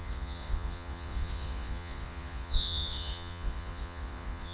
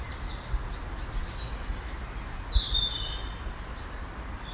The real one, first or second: second